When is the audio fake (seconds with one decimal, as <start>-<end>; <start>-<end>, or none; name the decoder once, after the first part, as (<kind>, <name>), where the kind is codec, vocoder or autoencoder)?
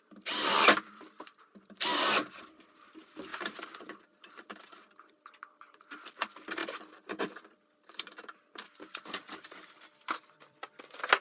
0.0-3.3 (vocoder, BigVGAN v2); 4.0-11.2